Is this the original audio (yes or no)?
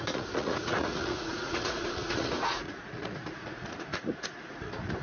no